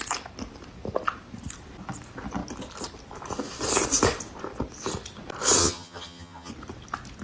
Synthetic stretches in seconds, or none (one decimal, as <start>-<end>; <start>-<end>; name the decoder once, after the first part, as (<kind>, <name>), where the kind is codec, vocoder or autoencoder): 5.6-6.5 (vocoder, HiFi-GAN)